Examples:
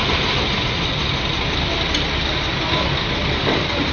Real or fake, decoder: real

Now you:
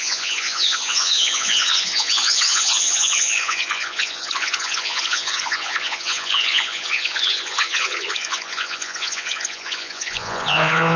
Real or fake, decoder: fake, vocoder, Vocos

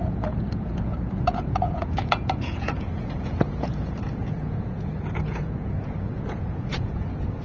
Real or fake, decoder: fake, vocoder, Vocos